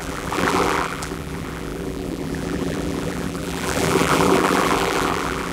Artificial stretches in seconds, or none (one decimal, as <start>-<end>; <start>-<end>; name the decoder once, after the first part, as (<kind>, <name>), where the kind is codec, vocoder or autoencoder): 0.0-5.5 (vocoder, BigVGAN v2)